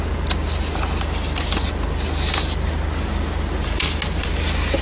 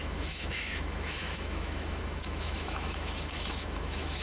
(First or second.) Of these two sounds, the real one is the first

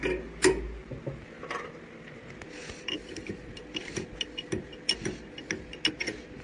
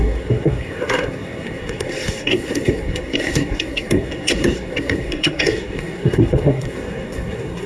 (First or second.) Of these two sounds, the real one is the first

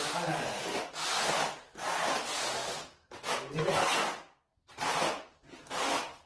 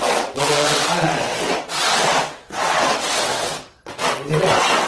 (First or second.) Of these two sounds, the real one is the first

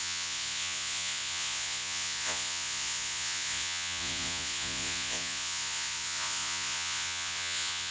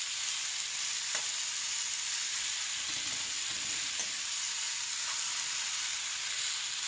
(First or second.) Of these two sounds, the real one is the second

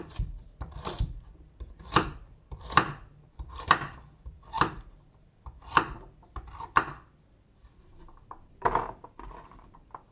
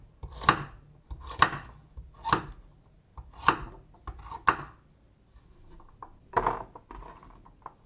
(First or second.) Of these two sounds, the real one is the second